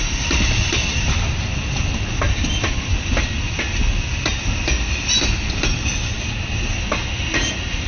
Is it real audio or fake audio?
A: real